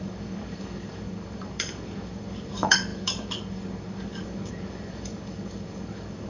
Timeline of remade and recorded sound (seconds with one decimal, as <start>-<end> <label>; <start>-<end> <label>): 0.0-6.3 remade